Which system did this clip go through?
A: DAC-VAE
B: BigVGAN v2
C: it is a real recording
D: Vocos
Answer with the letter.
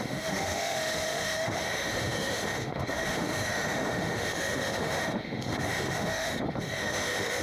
A